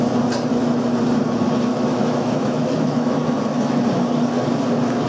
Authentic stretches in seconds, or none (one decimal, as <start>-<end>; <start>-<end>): 0.0-0.5; 1.0-1.7; 3.9-5.1